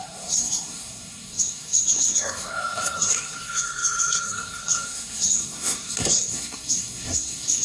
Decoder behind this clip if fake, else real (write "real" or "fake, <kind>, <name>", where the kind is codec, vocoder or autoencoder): fake, codec, SNAC